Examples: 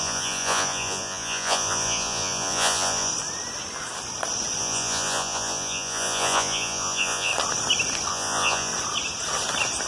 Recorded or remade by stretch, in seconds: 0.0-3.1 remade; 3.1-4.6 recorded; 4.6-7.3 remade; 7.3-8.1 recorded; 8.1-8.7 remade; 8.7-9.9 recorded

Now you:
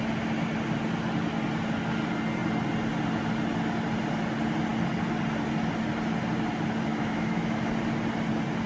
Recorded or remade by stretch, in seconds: 0.0-6.9 recorded; 6.9-7.7 remade; 7.7-8.7 recorded

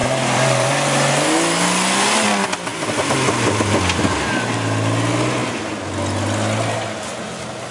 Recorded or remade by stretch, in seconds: 0.0-0.7 remade; 0.7-2.7 recorded; 2.7-3.3 remade; 3.3-7.7 recorded

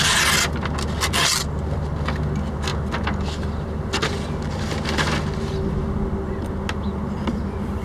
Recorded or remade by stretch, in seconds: 0.0-7.8 recorded

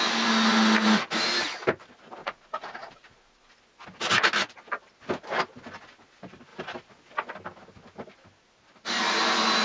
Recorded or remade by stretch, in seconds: 0.0-2.2 recorded; 2.2-3.5 remade; 3.5-9.6 recorded

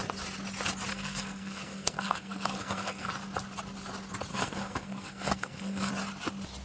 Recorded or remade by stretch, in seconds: 0.0-0.9 recorded; 0.9-3.1 remade; 3.1-4.3 recorded; 4.3-5.9 remade; 5.9-6.6 recorded

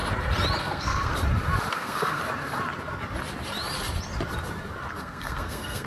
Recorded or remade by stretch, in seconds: 0.0-0.6 recorded; 0.6-1.1 remade; 1.1-1.7 recorded; 1.7-2.2 remade; 2.2-5.0 recorded; 5.0-5.9 remade